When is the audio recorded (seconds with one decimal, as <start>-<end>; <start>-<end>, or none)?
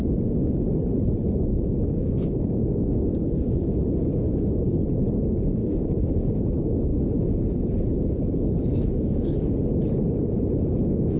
0.0-1.5; 3.8-5.6; 6.3-11.2